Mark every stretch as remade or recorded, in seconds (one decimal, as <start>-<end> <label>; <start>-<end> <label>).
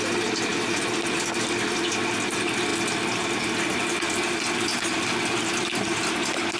0.0-2.7 recorded; 2.7-5.4 remade; 5.4-6.6 recorded